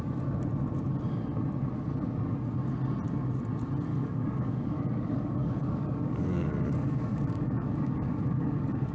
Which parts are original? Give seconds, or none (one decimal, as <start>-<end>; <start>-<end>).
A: 0.0-3.9